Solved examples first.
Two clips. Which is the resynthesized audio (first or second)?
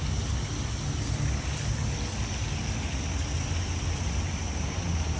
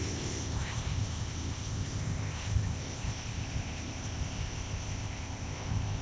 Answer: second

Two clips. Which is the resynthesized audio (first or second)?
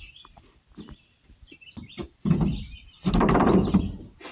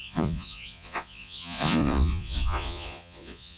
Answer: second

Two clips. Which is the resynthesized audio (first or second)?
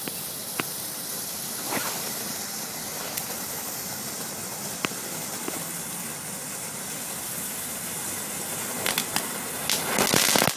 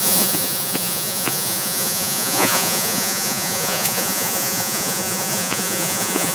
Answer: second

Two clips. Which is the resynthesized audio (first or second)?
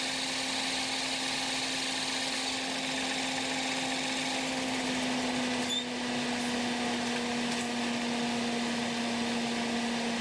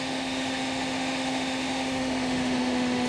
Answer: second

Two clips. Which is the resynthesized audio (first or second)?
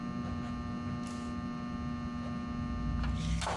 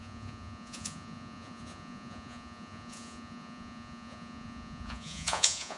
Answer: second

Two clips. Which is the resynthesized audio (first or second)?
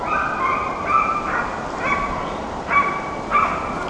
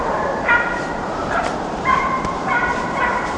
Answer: second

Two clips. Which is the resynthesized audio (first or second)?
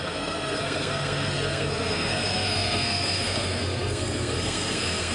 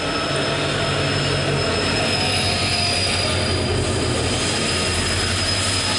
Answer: first